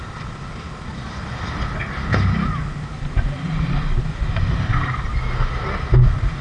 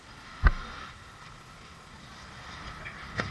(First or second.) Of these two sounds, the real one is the first